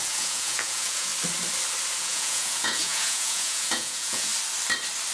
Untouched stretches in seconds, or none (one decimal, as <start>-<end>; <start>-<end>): 1.1-2.0; 4.3-5.1